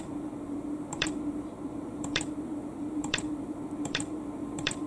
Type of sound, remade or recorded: remade